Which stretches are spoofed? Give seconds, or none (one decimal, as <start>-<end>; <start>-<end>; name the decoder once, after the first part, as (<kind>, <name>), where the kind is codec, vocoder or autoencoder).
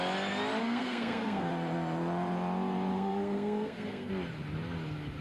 0.6-1.5 (codec, SNAC); 2.9-4.1